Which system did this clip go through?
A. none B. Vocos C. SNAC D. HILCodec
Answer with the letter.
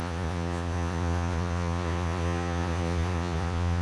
B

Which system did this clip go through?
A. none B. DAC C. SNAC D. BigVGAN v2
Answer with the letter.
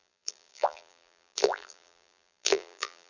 D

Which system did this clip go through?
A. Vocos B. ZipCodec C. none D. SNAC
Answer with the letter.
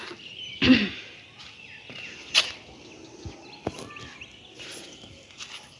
C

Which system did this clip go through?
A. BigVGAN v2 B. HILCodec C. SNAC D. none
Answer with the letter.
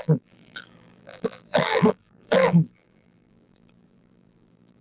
A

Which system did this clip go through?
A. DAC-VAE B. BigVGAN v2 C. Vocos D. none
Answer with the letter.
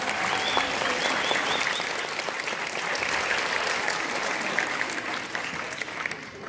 D